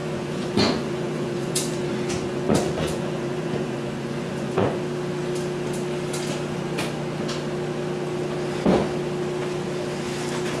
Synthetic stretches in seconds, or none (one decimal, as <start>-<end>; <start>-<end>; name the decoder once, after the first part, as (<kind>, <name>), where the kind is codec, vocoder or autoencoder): 0.0-4.8 (vocoder, Vocos)